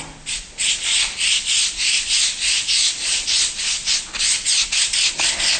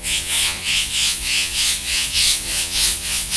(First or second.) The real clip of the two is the first